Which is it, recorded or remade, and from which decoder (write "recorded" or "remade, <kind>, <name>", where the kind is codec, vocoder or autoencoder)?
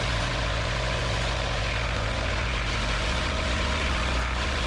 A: remade, vocoder, Vocos